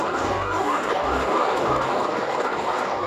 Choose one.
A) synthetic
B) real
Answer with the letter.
A